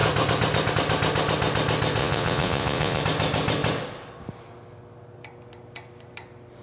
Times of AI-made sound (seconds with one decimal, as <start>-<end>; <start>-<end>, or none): 2.0-3.0